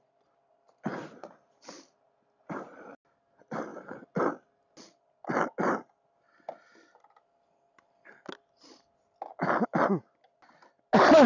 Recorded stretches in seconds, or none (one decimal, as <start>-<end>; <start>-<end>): 0.0-11.3